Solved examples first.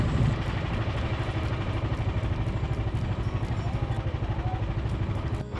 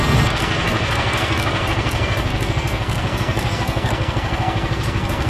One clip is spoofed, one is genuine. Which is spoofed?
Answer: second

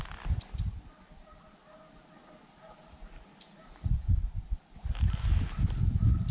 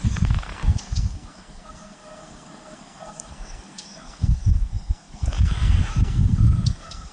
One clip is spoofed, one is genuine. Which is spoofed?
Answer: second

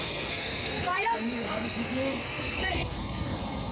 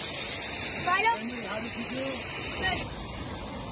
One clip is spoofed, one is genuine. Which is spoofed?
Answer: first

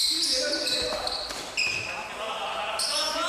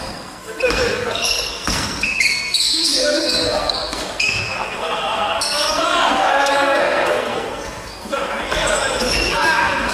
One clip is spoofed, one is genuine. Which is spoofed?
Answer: second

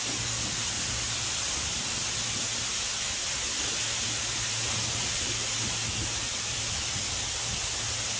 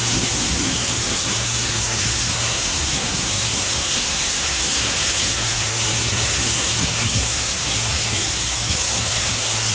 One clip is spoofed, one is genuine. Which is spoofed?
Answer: second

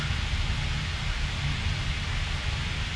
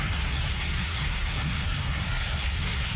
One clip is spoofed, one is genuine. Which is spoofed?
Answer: second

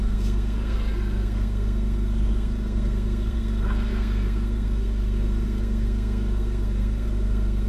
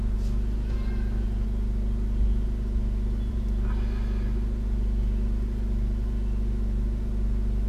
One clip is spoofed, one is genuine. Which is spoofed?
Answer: first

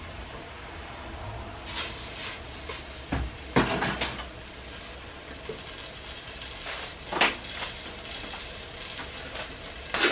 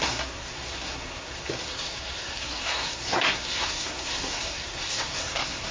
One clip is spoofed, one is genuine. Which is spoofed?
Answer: second